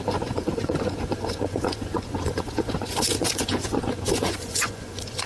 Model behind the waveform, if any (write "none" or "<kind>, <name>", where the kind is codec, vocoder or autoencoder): vocoder, Vocos